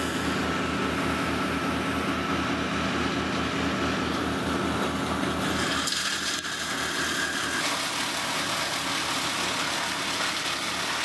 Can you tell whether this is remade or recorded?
recorded